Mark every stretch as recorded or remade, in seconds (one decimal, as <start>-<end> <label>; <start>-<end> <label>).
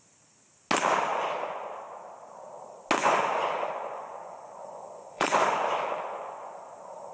0.0-1.1 recorded; 1.1-1.7 remade; 1.7-3.0 recorded; 3.0-7.1 remade